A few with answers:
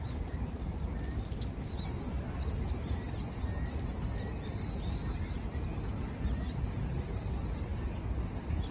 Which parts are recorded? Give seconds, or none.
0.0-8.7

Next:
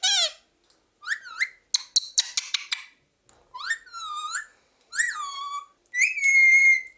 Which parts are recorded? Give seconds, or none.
0.0-7.0

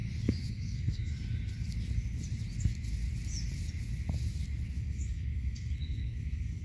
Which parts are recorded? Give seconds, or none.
0.0-0.5; 1.1-4.8

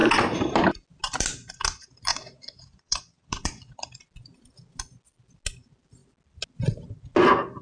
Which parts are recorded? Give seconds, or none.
0.0-2.1; 3.9-7.6

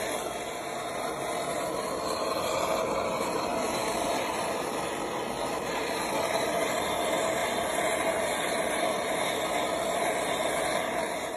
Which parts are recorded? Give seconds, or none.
0.0-3.5; 4.4-11.4

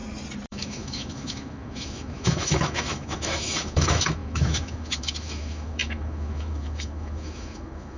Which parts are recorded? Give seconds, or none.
0.0-0.5